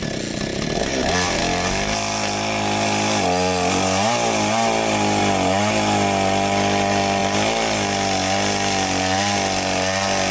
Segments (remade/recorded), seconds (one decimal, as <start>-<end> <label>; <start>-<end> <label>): 0.0-10.3 recorded